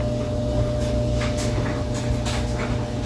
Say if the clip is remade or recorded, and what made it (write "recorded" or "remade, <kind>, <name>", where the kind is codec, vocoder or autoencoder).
recorded